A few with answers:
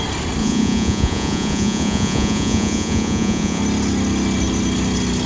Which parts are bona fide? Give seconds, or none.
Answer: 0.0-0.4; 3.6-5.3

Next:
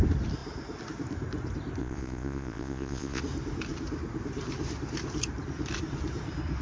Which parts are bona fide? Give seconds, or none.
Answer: 0.0-1.8; 3.2-6.6

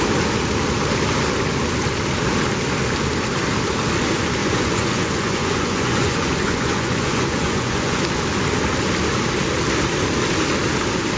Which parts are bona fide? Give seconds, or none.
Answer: 0.0-4.4; 8.0-11.2

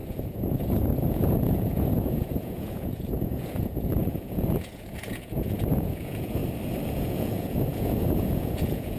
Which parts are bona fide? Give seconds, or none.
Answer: 6.4-7.0

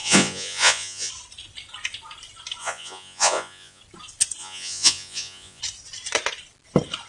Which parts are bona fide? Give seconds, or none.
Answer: 1.1-2.6; 3.8-4.4; 5.6-7.1

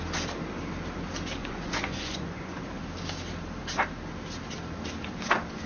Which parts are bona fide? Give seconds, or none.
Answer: 0.0-1.4; 2.6-5.7